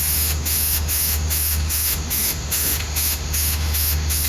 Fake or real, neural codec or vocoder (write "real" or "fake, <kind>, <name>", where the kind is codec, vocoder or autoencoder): fake, autoencoder, DAC-VAE